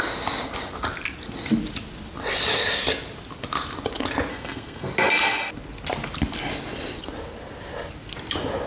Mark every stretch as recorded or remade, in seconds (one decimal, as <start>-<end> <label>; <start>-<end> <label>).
0.0-4.3 recorded; 4.3-4.9 remade; 4.9-8.7 recorded